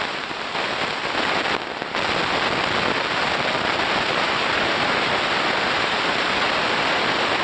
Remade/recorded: recorded